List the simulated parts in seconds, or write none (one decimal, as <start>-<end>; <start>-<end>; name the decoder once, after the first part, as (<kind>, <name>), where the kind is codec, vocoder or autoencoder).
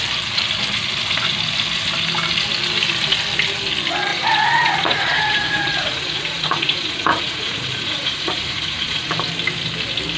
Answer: 4.1-9.1 (vocoder, Vocos)